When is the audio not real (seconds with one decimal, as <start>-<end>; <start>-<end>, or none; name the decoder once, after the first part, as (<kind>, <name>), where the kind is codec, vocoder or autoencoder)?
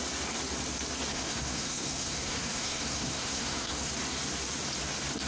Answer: 1.1-3.9 (codec, SNAC)